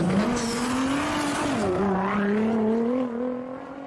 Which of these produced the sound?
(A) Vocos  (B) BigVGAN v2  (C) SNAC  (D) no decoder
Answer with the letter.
D